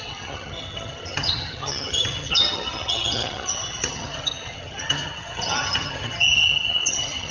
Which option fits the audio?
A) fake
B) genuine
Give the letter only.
A